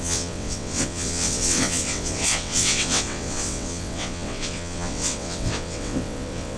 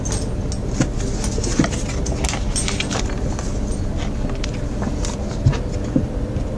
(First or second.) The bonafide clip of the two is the second